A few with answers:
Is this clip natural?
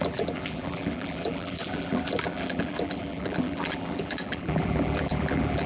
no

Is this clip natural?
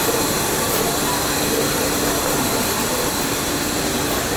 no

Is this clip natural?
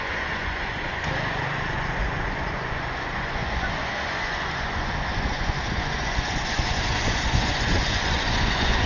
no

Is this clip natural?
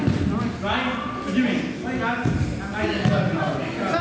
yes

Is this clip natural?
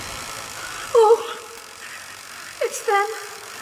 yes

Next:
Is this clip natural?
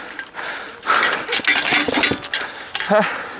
yes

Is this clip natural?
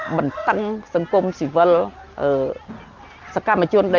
yes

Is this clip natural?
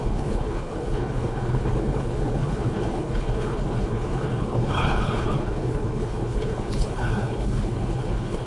no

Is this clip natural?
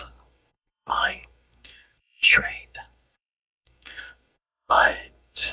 no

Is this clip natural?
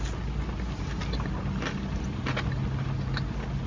yes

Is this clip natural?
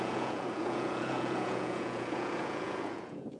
no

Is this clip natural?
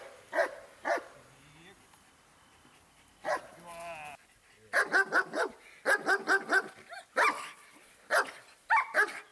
yes